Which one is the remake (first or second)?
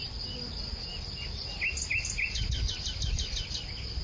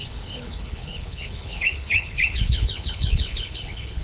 second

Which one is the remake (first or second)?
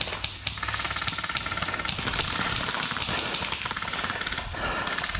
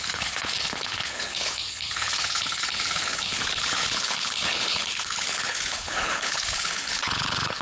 second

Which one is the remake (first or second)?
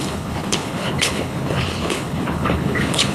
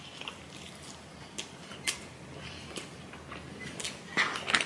first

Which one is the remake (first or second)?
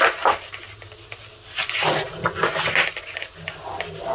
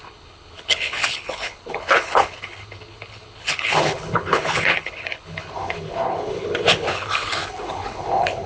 second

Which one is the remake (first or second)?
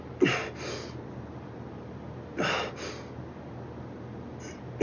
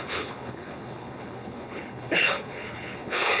second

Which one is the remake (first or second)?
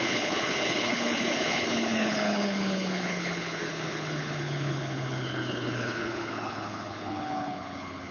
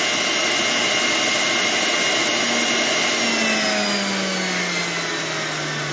first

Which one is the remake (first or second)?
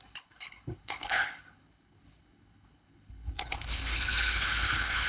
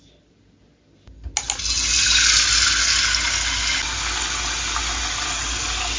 first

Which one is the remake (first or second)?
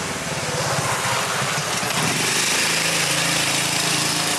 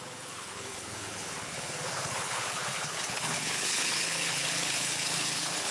second